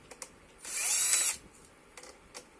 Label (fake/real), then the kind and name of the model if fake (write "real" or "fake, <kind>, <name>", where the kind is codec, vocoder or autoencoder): real